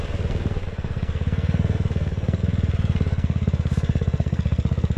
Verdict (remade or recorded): remade